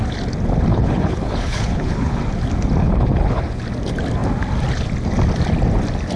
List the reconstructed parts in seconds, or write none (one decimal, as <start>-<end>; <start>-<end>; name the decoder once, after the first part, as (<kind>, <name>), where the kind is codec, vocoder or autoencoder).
0.7-2.2 (codec, HILCodec); 2.8-3.6